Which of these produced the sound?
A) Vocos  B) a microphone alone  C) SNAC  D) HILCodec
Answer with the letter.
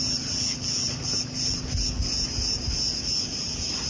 B